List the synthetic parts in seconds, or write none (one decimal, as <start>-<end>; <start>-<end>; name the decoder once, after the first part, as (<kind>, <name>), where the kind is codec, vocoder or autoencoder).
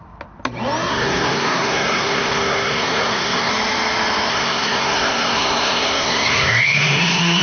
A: 0.9-3.5 (codec, SNAC); 4.3-7.4